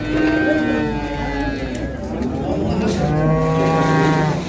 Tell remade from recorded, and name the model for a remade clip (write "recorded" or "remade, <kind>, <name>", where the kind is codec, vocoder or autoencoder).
recorded